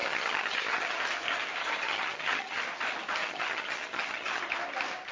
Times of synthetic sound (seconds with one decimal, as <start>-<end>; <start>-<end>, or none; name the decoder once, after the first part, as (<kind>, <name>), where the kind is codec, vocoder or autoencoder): 0.0-1.0 (vocoder, HiFi-GAN); 1.6-2.6; 3.2-4.4